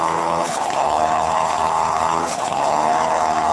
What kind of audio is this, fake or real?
fake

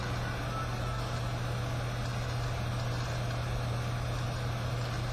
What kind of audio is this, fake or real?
real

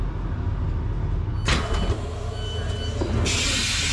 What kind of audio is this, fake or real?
real